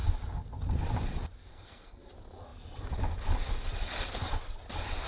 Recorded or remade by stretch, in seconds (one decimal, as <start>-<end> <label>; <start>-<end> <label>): 0.0-1.5 recorded; 1.5-2.1 remade; 2.1-5.1 recorded